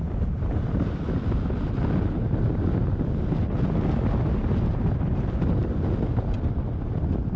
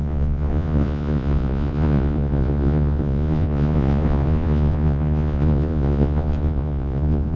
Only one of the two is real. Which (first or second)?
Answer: first